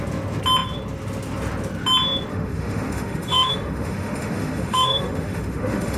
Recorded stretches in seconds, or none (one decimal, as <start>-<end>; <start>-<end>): 0.0-2.3